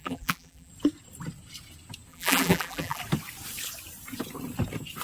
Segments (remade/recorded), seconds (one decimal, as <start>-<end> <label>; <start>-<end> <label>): 0.0-0.7 remade; 0.7-2.1 recorded; 2.1-3.0 remade; 3.0-5.0 recorded